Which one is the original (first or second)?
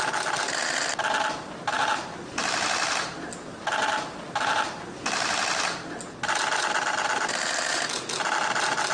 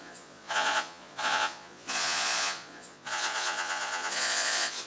first